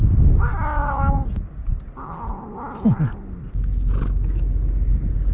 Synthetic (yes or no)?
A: no